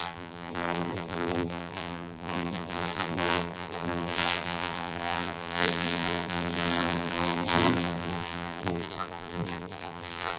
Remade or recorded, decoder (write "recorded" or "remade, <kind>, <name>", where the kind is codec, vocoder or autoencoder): remade, vocoder, BigVGAN v2